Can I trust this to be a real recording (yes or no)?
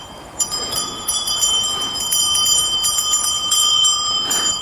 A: no